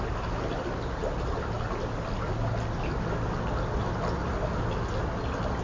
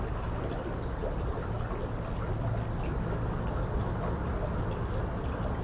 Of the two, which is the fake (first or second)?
second